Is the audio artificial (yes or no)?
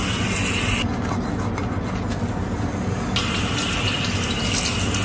no